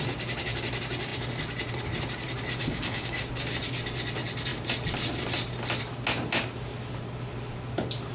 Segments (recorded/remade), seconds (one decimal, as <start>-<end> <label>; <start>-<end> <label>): 0.0-2.6 recorded; 2.6-3.2 remade; 3.2-8.1 recorded